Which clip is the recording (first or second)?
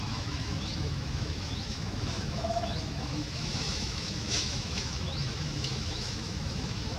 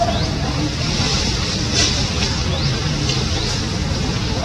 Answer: second